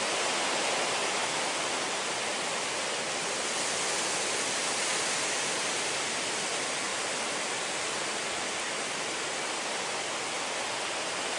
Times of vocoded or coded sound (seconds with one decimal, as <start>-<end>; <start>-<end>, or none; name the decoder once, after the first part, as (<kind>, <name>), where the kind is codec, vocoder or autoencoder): none